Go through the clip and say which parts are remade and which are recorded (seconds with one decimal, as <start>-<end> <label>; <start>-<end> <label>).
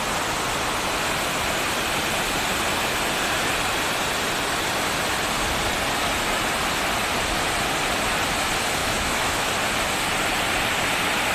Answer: 0.0-8.8 recorded; 8.8-9.5 remade; 9.5-11.3 recorded